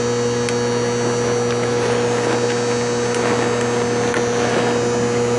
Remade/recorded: recorded